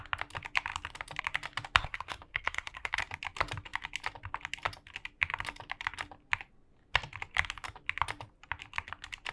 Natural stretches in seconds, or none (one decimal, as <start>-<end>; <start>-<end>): 0.0-1.8; 3.0-9.3